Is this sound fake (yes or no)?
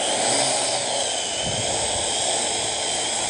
no